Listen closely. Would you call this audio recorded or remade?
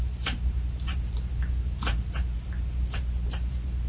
remade